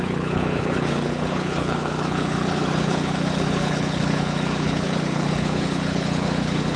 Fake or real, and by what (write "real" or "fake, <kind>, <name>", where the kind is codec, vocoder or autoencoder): fake, codec, HILCodec